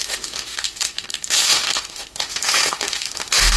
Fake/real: fake